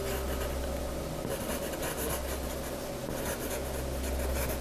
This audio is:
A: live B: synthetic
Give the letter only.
A